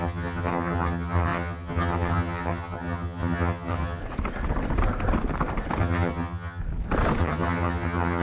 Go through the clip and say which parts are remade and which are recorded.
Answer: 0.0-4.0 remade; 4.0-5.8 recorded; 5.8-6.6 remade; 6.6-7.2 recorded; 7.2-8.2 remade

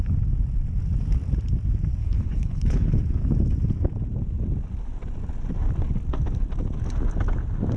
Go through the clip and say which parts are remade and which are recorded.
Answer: 0.0-2.0 recorded; 2.0-3.0 remade; 3.0-7.8 recorded

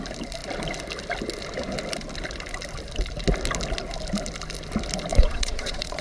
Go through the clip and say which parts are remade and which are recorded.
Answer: 0.0-5.1 recorded; 5.1-6.0 remade

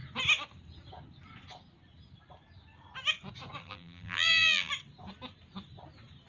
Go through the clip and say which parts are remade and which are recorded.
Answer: 0.0-3.6 recorded; 3.6-4.7 remade; 4.7-6.3 recorded